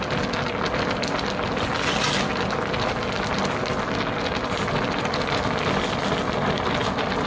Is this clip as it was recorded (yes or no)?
yes